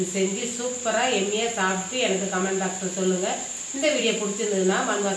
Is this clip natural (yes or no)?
yes